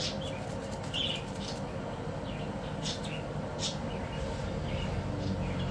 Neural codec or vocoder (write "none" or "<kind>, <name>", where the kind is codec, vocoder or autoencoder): none